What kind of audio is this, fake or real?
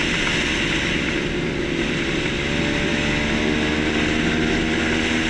real